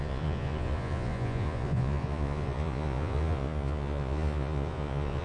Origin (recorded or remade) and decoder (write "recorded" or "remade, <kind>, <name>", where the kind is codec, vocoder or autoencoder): remade, vocoder, Vocos